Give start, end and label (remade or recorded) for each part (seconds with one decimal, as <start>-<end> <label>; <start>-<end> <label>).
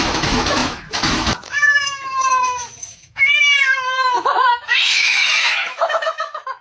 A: 0.0-6.6 remade